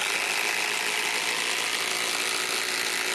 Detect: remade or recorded recorded